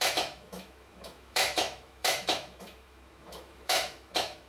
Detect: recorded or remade remade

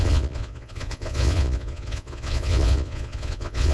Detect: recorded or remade remade